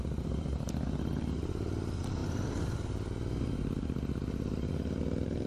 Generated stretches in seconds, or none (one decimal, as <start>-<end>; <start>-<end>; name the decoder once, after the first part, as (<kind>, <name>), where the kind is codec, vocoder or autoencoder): none